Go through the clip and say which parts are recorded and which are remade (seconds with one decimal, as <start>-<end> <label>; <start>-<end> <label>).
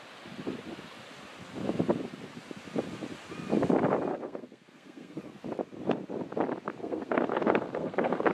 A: 0.0-4.1 recorded; 4.1-5.2 remade; 5.2-6.8 recorded; 6.8-8.3 remade